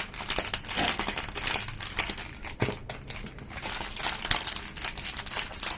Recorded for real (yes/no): yes